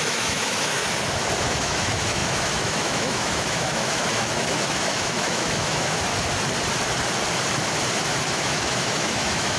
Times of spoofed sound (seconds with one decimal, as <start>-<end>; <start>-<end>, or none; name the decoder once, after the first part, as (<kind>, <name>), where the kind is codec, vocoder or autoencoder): 0.0-0.8 (autoencoder, DAC-VAE); 1.4-6.1; 8.3-9.6